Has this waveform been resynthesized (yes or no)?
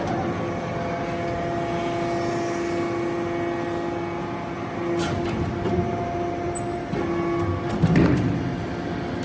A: no